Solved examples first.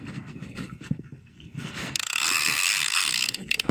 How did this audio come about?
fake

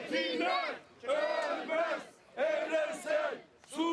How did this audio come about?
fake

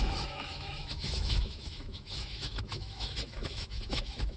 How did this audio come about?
fake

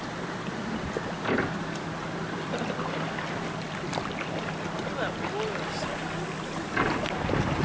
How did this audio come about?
real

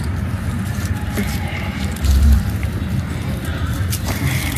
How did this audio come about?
fake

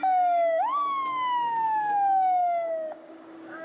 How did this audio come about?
fake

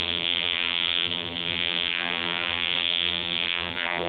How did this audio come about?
fake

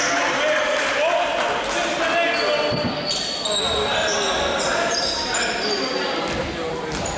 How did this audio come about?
real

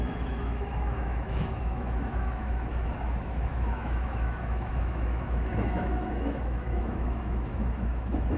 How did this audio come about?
fake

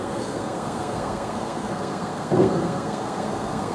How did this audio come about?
fake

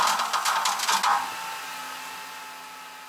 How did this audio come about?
real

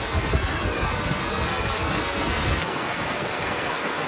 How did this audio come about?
fake